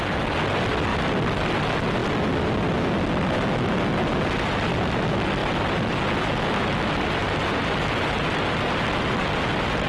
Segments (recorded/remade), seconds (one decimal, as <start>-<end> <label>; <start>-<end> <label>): 0.0-9.9 recorded